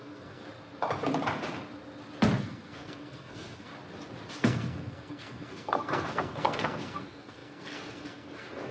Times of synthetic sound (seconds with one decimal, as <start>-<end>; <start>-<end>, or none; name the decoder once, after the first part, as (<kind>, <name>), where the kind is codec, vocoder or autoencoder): 0.0-0.4 (codec, SNAC); 2.4-3.7; 4.4-8.7